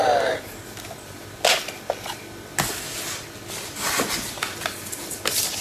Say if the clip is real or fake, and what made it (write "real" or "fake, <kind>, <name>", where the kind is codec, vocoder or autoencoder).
real